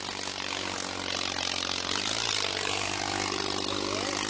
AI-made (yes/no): no